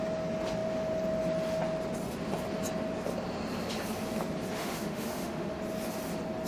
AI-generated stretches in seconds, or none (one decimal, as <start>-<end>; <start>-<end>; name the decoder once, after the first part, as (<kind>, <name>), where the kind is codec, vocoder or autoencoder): 4.6-5.6 (autoencoder, DAC-VAE)